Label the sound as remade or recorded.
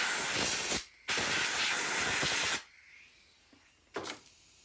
recorded